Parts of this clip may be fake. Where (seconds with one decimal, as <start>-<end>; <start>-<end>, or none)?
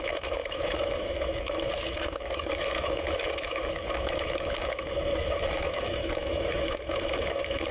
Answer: 0.0-7.7